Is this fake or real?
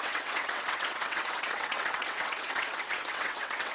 fake